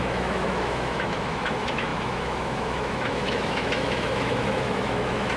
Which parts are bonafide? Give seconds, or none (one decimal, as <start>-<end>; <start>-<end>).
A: none